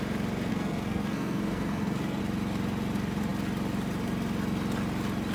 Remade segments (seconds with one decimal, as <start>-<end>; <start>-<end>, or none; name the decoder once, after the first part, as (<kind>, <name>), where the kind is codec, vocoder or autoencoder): 0.5-2.2 (codec, SNAC)